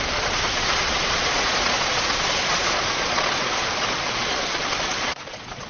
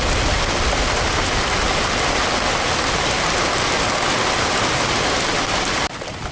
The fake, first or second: first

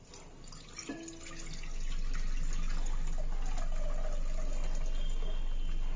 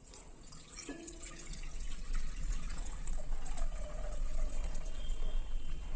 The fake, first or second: second